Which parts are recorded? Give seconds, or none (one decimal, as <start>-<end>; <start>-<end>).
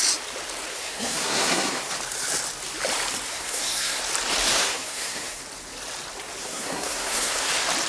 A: 0.0-0.7; 1.9-3.3; 4.0-4.5; 5.4-6.4; 7.5-7.9